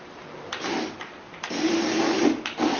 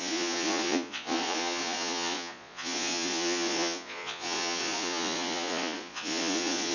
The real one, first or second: first